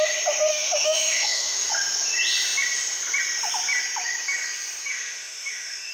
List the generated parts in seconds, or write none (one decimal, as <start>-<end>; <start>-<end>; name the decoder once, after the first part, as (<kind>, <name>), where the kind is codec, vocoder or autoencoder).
0.5-1.7 (autoencoder, DAC-VAE); 4.9-5.9